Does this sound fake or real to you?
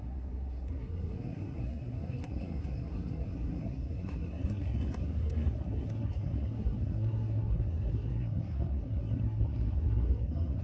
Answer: fake